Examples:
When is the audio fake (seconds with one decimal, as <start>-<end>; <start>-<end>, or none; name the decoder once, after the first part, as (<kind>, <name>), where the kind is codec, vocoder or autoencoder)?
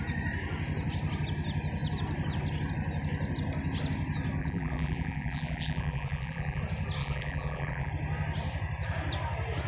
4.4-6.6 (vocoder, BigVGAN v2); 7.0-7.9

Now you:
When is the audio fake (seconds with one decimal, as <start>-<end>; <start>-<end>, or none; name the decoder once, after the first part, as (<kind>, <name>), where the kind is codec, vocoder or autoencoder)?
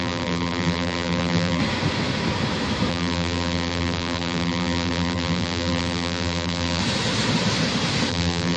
0.0-1.6 (vocoder, BigVGAN v2); 2.9-6.8; 8.1-8.6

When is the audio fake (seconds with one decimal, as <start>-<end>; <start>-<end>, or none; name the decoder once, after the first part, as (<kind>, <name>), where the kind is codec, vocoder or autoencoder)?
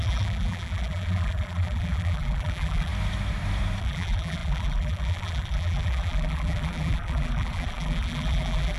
0.0-2.9 (vocoder, BigVGAN v2); 3.8-8.8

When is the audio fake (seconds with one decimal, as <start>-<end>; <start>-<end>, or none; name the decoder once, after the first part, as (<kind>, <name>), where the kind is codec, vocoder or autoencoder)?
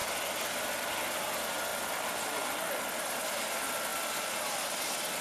1.7-2.8 (vocoder, BigVGAN v2)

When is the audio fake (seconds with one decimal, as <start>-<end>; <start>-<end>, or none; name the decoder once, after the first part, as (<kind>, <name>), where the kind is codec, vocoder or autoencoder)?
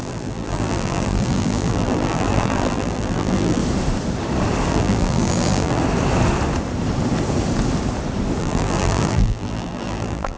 0.0-3.6 (vocoder, BigVGAN v2); 4.7-5.8; 8.4-10.4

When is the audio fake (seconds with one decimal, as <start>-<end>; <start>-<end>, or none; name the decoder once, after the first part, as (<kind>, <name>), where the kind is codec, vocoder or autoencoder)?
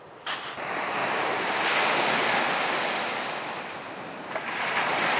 1.0-1.6 (vocoder, BigVGAN v2)